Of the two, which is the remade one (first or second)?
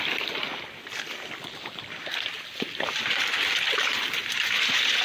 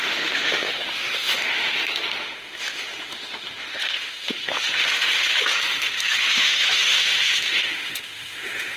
second